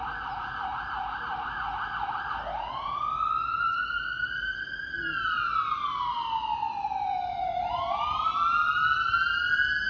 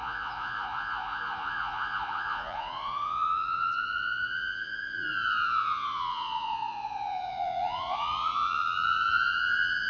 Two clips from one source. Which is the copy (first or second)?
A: second